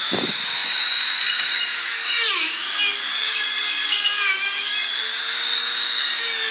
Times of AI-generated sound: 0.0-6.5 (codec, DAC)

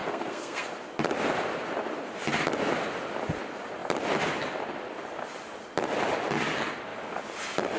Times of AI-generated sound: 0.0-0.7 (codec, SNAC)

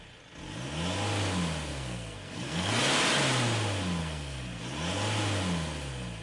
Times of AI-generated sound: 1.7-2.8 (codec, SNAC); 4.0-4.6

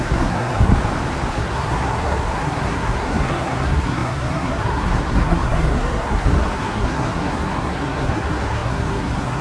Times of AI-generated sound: 0.0-0.7 (codec, SNAC); 1.3-9.4

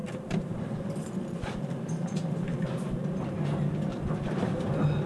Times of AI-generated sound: 0.0-3.1 (vocoder, BigVGAN v2); 3.9-4.6